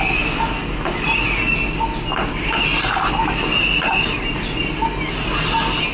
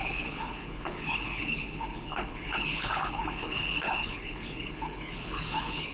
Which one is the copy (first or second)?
second